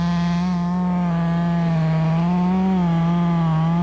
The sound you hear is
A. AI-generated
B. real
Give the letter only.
B